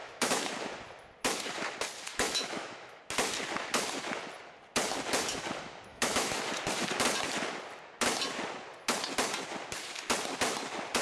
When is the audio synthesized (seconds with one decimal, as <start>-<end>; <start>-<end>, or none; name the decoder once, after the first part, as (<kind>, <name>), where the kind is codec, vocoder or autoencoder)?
0.0-0.5 (autoencoder, DAC-VAE); 2.1-3.0; 5.9-6.4